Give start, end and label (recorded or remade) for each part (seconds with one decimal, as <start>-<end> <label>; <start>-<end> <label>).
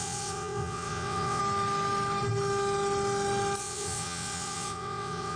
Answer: 0.0-1.4 remade; 1.4-3.6 recorded; 3.6-5.4 remade